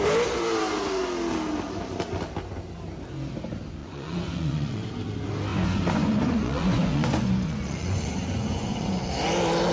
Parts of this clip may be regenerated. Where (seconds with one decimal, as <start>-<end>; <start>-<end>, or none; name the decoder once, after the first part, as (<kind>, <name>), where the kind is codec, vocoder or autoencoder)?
3.8-4.9 (vocoder, Vocos); 5.5-9.1